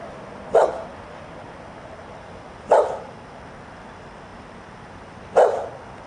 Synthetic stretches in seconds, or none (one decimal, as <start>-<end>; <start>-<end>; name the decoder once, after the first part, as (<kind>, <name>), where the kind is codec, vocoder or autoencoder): none